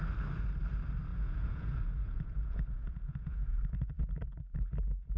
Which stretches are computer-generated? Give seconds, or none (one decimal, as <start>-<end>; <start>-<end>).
1.1-3.9